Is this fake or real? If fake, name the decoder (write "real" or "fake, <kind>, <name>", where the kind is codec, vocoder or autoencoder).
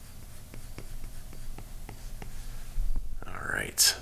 real